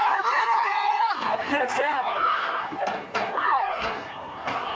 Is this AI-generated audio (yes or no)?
yes